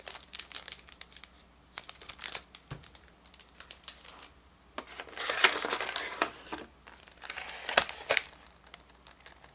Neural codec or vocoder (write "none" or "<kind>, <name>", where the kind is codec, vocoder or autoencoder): none